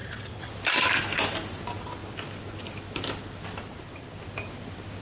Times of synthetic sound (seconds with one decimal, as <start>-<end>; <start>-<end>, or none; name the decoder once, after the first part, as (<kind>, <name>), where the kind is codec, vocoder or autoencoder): 0.0-0.5 (vocoder, WaveNeXt)